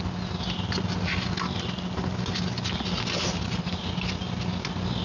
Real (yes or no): yes